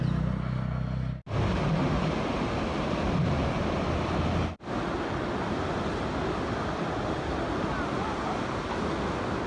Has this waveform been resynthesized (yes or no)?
no